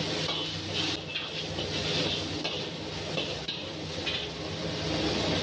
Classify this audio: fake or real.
real